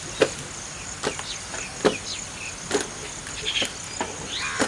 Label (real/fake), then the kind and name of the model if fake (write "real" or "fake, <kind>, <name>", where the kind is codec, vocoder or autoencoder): real